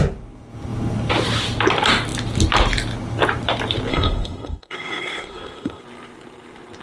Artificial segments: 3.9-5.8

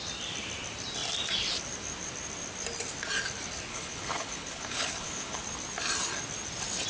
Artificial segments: 3.7-5.4